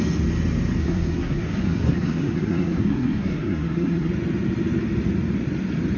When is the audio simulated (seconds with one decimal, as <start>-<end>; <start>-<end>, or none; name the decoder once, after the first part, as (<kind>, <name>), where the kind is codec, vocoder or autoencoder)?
0.8-4.1 (codec, SNAC)